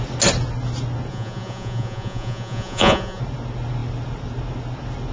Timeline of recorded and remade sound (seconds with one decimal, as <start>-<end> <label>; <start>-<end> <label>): 0.0-1.1 recorded; 1.1-3.2 remade; 3.2-5.1 recorded